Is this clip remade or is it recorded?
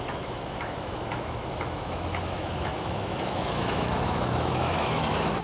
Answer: remade